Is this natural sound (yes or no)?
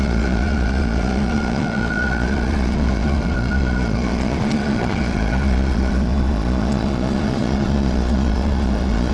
no